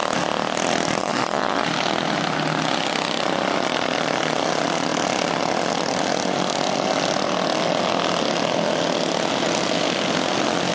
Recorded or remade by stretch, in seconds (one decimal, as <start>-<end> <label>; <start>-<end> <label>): 0.0-1.0 recorded; 1.0-1.6 remade; 1.6-10.7 recorded